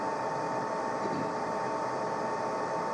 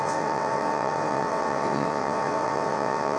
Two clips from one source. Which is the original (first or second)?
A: first